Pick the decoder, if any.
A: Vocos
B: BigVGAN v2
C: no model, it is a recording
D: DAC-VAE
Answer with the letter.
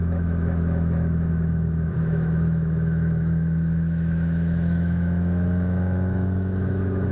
D